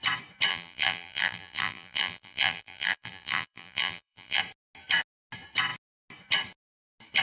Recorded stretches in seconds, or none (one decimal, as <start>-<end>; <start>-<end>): 0.0-0.5; 4.4-7.2